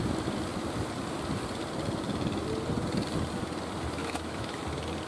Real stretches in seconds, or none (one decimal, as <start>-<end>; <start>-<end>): 0.0-4.0; 4.6-5.1